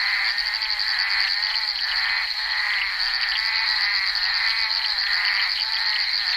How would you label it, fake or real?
real